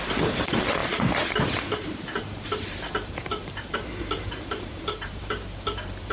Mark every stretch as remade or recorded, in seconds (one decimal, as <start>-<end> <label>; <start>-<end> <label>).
0.0-6.1 remade